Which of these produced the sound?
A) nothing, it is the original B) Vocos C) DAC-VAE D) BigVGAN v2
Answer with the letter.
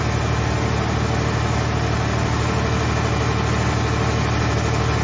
A